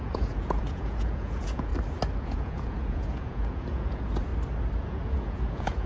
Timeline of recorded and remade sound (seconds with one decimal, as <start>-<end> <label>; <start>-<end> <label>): 0.0-1.7 remade; 1.7-2.2 recorded; 2.2-4.3 remade; 4.3-4.8 recorded; 4.8-5.9 remade